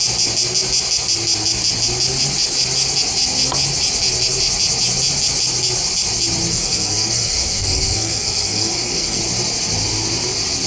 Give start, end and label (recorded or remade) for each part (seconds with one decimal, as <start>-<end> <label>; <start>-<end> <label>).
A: 0.0-6.5 recorded; 6.5-9.2 remade; 9.2-10.7 recorded